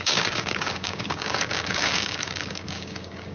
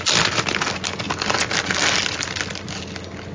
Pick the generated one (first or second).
first